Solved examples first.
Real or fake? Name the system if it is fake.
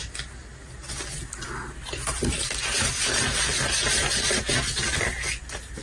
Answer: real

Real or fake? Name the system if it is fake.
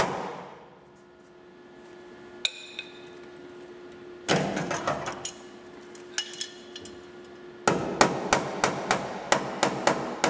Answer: real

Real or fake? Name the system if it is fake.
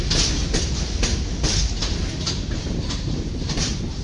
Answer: real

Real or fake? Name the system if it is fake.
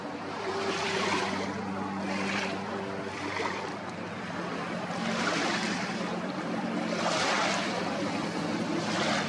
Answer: fake, vocoder, BigVGAN v2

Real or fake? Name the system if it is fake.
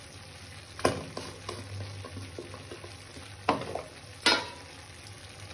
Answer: real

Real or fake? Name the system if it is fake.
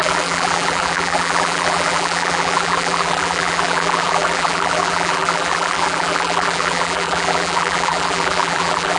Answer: fake, vocoder, BigVGAN v2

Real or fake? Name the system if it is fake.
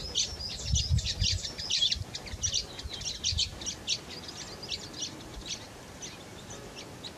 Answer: real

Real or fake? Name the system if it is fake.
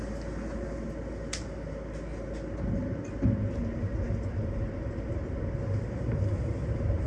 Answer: real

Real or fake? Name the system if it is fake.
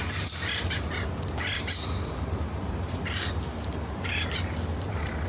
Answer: fake, vocoder, BigVGAN v2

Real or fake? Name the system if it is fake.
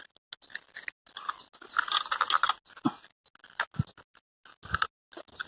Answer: real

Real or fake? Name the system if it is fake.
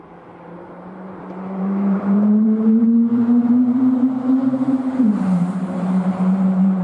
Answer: fake, vocoder, BigVGAN v2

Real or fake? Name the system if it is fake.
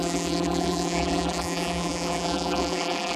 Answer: fake, vocoder, BigVGAN v2